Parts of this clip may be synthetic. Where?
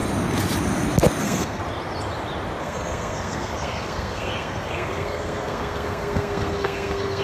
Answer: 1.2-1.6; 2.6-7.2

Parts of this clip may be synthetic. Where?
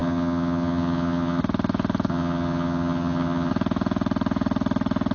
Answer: 0.0-1.4; 2.1-3.5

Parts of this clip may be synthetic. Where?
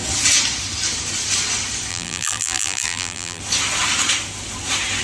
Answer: 1.9-3.4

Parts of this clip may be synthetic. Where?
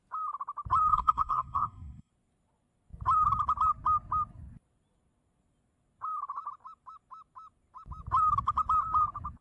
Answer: 0.9-2.1